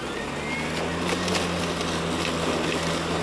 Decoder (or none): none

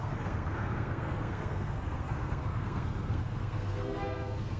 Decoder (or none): codec, SNAC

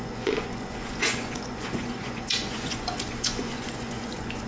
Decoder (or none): vocoder, Vocos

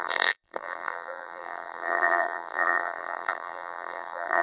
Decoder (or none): vocoder, BigVGAN v2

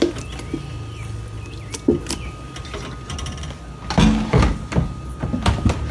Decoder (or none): none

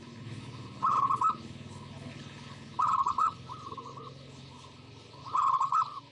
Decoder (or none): codec, HILCodec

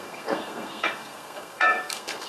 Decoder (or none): codec, SNAC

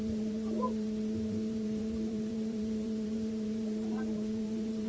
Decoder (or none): vocoder, BigVGAN v2